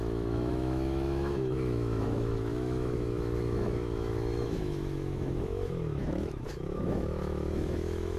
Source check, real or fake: fake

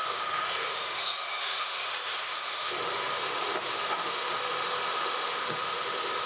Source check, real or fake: fake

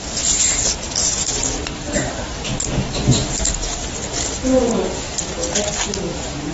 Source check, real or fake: real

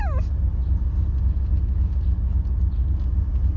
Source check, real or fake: real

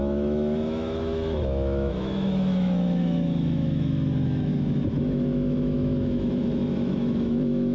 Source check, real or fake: fake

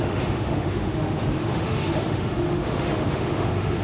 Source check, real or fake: fake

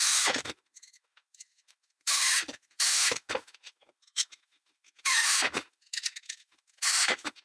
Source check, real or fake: fake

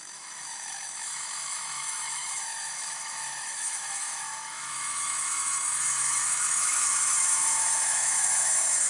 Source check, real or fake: fake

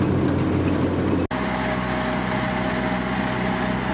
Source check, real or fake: real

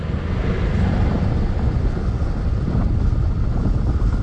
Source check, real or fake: real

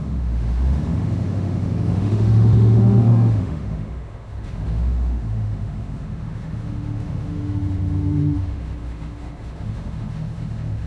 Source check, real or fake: fake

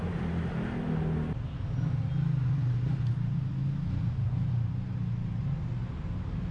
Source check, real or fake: real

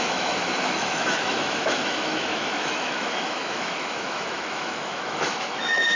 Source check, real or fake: fake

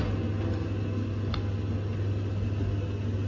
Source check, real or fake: real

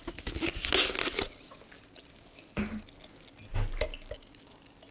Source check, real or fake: real